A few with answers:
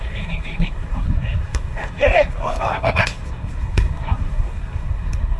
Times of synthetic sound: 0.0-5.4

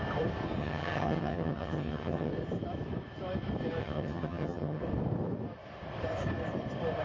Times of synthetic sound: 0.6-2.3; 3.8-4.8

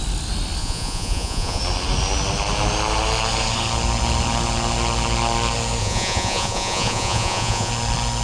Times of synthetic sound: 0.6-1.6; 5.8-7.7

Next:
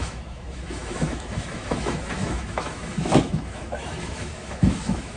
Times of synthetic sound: 0.0-5.2

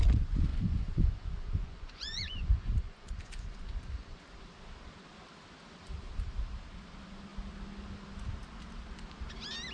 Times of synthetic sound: 0.5-4.2

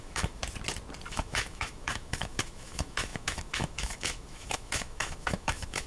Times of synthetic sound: 0.0-0.4; 1.1-5.9

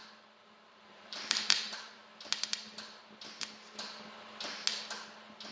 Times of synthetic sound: 0.7-2.0